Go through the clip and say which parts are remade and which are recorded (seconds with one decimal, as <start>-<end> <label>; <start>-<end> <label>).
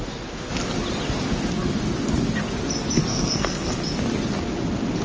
0.0-3.1 recorded; 3.1-3.7 remade; 3.7-5.0 recorded